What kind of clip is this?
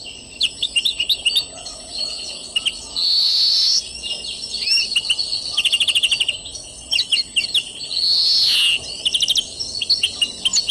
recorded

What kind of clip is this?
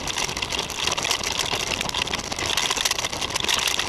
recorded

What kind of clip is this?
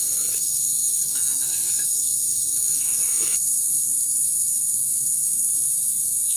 remade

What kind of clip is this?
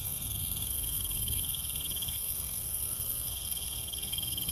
remade